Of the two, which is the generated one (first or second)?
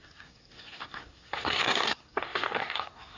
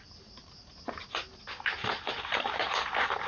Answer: first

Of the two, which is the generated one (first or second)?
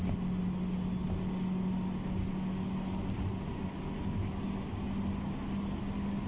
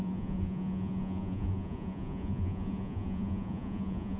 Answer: second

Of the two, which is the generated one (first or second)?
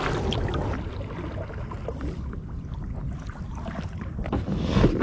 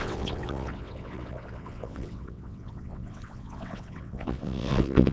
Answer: second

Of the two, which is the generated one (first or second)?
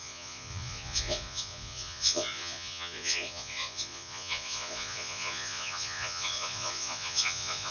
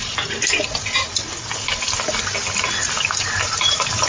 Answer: first